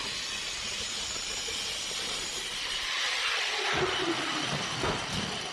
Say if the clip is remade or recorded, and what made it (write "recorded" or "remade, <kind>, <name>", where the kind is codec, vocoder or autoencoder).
recorded